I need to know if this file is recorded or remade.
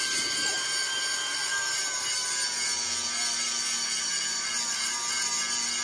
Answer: recorded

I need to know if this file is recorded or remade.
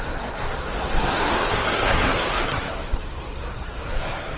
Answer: remade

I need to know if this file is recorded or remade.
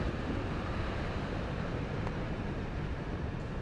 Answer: remade